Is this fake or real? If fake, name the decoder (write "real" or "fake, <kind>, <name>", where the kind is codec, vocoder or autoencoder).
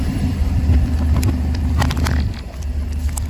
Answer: fake, vocoder, BigVGAN v2